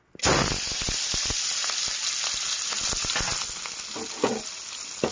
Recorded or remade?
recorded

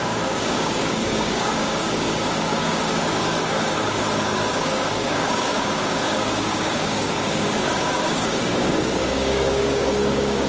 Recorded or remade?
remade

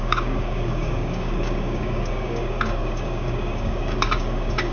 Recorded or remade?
remade